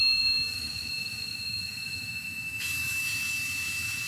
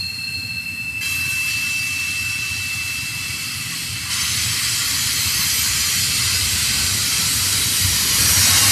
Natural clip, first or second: second